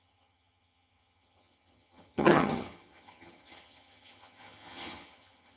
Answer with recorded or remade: remade